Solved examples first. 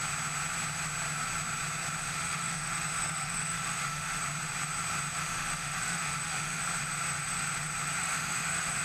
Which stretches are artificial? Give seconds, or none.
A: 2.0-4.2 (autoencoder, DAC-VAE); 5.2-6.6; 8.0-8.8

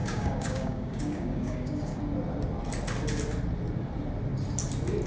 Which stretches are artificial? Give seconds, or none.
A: 0.0-1.9 (codec, DAC)

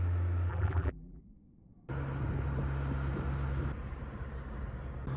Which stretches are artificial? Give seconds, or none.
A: 0.5-1.2 (vocoder, BigVGAN v2)

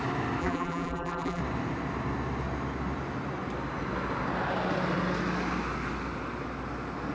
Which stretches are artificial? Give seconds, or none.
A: 0.4-1.4 (vocoder, BigVGAN v2)

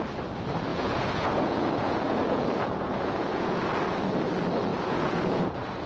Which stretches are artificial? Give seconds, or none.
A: 0.7-3.6 (vocoder, Vocos); 4.7-5.9

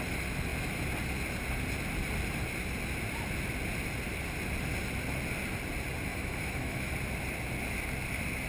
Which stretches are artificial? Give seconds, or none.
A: 6.1-6.9 (autoencoder, DAC-VAE)

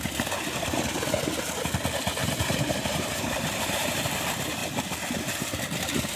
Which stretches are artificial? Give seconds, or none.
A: 2.2-4.0 (vocoder, BigVGAN v2)

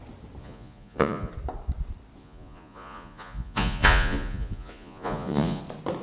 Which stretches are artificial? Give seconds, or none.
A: 0.4-1.3 (vocoder, Vocos); 2.2-5.6